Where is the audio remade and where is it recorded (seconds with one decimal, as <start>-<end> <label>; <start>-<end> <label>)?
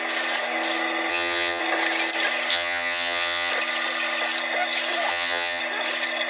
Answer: 0.0-1.1 recorded; 1.1-1.6 remade; 1.6-2.5 recorded; 2.5-3.5 remade; 3.5-5.1 recorded; 5.1-5.6 remade; 5.6-6.3 recorded